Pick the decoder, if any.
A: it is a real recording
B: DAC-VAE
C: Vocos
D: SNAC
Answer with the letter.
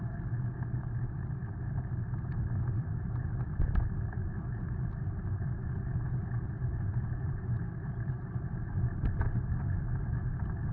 A